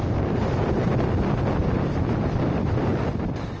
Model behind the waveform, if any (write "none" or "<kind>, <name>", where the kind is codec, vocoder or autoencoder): none